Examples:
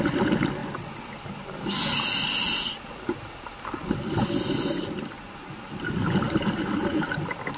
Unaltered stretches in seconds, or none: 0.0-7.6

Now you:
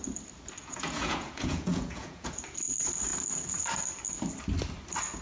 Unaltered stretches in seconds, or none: 0.0-0.6; 2.4-5.2

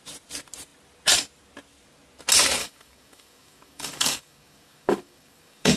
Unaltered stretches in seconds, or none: 0.0-2.6